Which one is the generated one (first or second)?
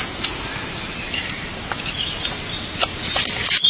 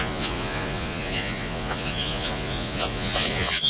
second